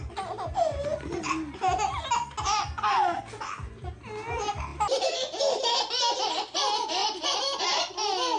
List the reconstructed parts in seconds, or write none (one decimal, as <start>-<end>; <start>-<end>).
7.0-7.9